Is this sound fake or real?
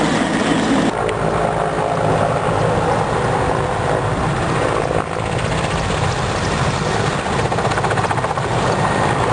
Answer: real